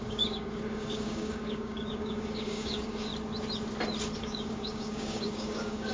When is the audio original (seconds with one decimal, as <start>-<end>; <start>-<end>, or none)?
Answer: 3.1-4.2